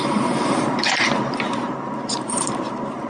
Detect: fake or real fake